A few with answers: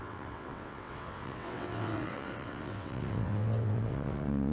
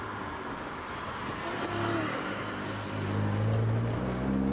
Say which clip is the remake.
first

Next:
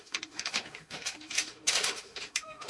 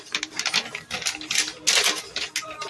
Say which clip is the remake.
first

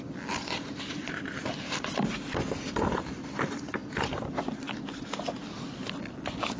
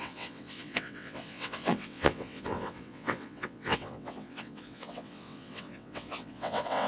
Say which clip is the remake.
second